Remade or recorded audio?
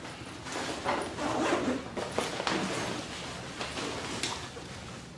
recorded